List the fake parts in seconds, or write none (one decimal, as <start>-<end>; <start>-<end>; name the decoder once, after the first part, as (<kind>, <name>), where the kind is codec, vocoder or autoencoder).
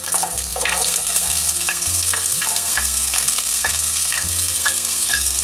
0.0-5.4 (codec, SNAC)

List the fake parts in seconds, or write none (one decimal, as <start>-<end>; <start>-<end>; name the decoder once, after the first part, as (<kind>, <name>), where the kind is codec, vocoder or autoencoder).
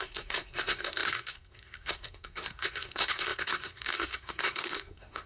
0.0-5.3 (codec, SNAC)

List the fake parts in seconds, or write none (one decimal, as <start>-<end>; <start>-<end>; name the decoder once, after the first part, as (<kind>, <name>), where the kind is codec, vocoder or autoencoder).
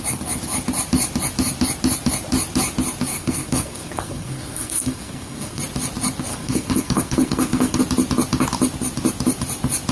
3.1-5.6 (codec, SNAC); 6.3-7.8